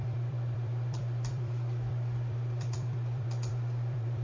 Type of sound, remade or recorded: remade